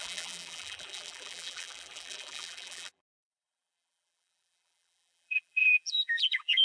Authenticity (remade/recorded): remade